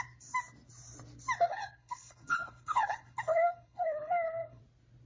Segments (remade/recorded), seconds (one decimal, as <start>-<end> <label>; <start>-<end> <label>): 0.0-1.5 recorded; 1.5-4.6 remade; 4.6-5.1 recorded